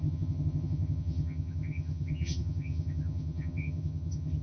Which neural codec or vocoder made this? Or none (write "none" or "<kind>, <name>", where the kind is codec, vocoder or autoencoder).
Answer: vocoder, HiFi-GAN